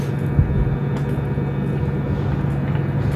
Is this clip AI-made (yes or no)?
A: no